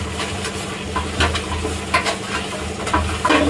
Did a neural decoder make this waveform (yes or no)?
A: no